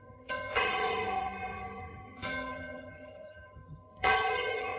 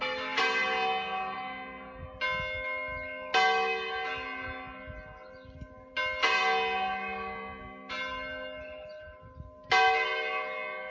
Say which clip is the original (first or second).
second